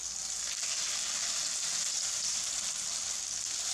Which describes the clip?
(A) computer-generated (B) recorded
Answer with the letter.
B